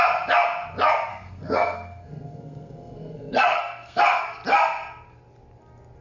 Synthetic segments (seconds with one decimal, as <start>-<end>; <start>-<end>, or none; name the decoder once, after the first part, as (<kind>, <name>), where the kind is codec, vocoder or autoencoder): 1.1-4.2 (codec, SNAC)